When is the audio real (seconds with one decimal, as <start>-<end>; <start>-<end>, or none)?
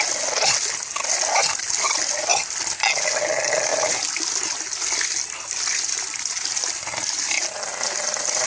0.0-8.5